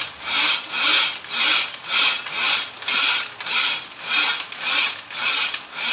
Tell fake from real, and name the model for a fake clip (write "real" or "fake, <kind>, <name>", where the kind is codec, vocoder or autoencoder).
real